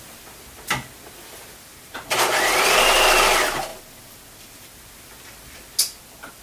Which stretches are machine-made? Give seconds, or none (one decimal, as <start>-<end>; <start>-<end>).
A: 1.7-2.6